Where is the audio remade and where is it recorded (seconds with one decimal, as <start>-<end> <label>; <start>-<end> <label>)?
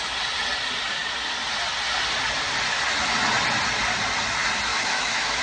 0.0-4.7 recorded; 4.7-5.4 remade